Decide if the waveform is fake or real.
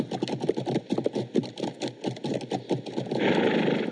real